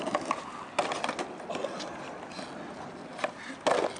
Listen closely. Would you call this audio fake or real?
real